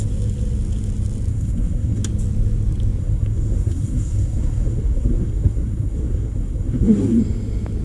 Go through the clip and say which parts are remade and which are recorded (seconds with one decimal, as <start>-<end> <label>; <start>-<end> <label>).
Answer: 0.0-1.3 recorded; 1.3-2.0 remade; 2.0-3.0 recorded; 3.0-7.2 remade; 7.2-7.8 recorded